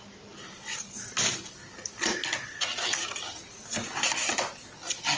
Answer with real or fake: real